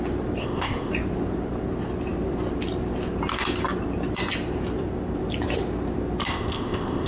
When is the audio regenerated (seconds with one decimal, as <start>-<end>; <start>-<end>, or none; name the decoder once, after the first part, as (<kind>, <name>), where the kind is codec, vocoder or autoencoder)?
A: 0.4-0.9 (codec, ZipCodec); 6.3-7.1